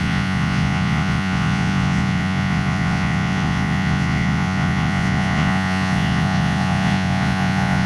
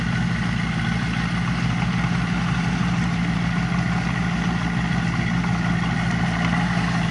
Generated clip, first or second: first